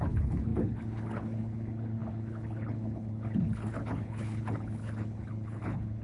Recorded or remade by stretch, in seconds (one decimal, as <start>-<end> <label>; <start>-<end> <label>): 0.0-6.0 remade